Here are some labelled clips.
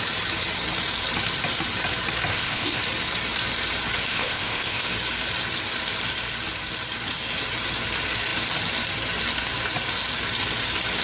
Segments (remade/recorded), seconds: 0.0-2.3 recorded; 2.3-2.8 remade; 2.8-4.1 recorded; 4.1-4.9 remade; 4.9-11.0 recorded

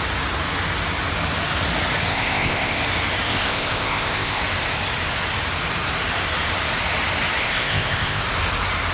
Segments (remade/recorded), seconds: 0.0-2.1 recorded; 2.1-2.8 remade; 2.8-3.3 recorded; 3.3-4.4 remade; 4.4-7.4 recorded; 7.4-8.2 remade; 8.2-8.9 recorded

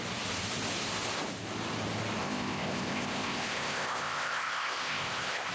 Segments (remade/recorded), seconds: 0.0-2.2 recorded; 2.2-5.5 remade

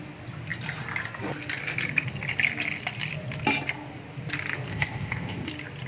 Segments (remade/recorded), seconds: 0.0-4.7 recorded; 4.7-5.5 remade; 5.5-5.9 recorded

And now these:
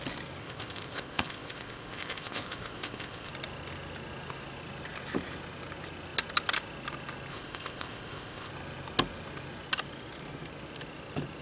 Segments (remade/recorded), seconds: 0.0-0.4 recorded; 0.4-3.3 remade; 3.3-7.3 recorded; 7.3-8.5 remade; 8.5-11.4 recorded

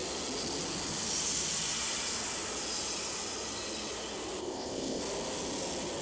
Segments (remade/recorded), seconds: 0.0-4.4 recorded; 4.4-5.0 remade; 5.0-6.0 recorded

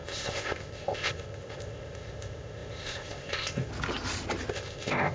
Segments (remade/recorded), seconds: 0.0-3.7 remade; 3.7-4.5 recorded; 4.5-5.1 remade